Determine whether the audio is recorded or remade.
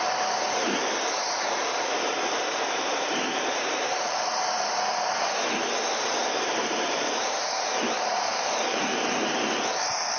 remade